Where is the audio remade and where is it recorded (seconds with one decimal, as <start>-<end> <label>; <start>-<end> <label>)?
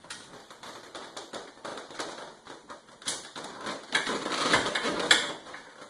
0.0-5.9 recorded